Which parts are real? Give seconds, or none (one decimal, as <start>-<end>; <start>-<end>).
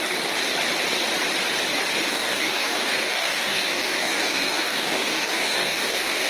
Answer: 0.0-2.1